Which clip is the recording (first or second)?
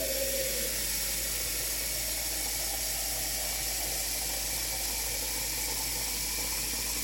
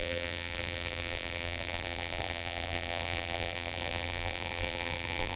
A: first